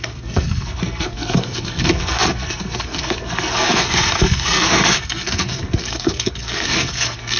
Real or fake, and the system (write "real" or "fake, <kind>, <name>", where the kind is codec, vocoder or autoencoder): fake, codec, SNAC